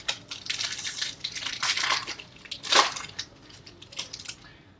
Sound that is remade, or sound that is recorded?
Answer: recorded